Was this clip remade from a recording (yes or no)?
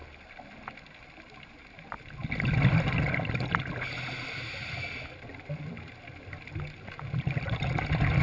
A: no